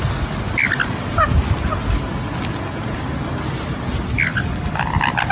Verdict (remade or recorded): recorded